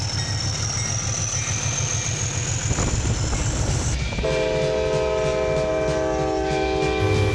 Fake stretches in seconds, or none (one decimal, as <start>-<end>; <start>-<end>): none